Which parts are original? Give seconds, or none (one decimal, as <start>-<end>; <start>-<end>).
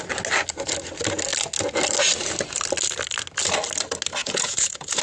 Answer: 0.0-4.2